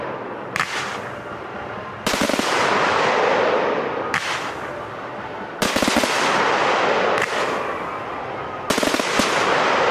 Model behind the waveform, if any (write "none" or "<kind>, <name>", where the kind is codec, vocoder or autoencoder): none